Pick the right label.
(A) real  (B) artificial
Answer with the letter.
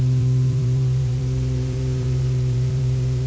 B